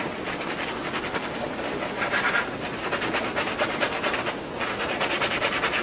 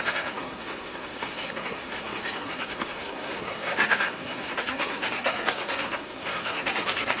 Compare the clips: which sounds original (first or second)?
first